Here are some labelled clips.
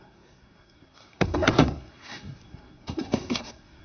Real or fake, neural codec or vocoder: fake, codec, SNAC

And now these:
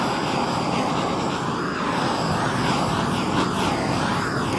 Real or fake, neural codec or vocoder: real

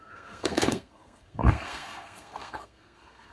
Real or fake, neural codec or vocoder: fake, codec, SNAC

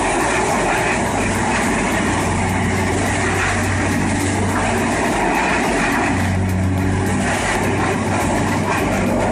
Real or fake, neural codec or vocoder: real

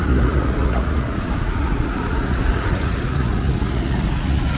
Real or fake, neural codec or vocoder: fake, vocoder, Vocos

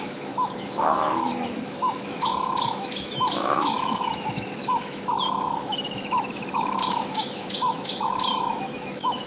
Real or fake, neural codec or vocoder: fake, autoencoder, DAC-VAE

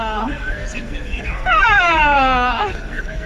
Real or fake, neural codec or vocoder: fake, codec, SNAC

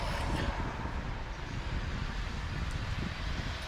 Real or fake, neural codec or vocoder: real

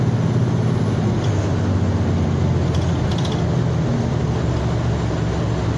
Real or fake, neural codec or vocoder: real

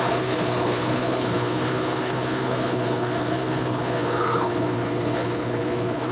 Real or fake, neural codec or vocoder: fake, codec, HILCodec